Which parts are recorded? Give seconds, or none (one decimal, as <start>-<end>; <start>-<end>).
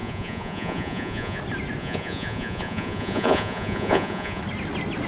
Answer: 1.4-1.8; 4.4-5.1